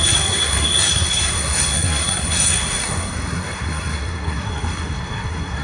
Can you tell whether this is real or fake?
fake